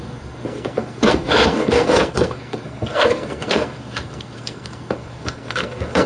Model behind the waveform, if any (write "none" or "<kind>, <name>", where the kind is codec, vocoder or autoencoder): codec, SNAC